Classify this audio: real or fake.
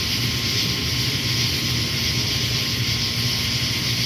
real